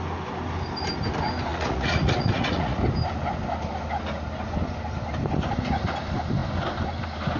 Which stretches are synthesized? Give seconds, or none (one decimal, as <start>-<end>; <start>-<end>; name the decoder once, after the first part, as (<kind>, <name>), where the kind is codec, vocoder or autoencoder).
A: 1.5-2.8 (vocoder, Vocos)